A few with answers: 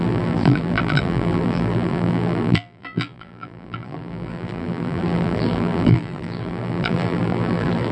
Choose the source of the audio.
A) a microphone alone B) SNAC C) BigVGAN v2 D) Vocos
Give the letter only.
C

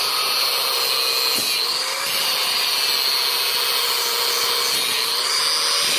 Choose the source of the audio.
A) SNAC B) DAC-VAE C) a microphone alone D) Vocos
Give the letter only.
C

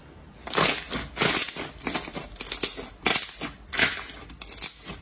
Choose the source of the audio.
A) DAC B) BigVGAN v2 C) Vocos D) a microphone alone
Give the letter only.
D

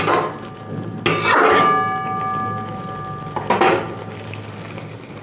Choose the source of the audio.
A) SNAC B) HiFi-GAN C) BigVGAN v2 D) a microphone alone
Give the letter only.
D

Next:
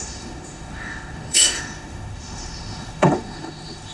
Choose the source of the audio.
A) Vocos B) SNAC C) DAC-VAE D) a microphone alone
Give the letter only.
C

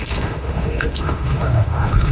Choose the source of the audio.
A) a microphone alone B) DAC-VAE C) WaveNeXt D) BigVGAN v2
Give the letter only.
B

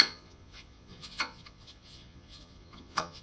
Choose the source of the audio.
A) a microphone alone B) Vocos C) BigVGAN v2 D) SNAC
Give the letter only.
B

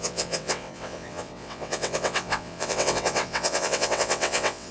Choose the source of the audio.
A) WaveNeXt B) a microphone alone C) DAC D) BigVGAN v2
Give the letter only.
A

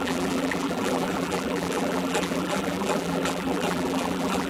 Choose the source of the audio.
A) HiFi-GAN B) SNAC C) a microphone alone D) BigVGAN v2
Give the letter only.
D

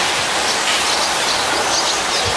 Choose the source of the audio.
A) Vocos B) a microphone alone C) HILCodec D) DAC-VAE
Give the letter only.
B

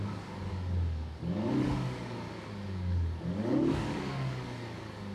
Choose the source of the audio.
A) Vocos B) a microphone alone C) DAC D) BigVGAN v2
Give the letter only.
C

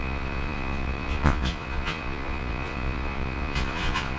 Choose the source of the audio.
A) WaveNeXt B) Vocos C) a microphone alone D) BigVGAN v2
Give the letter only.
B